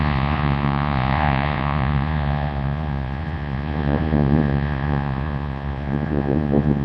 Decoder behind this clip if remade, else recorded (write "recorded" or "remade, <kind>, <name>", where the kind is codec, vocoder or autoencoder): remade, vocoder, Vocos